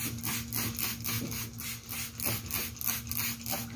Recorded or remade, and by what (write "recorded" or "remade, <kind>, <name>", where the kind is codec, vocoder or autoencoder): recorded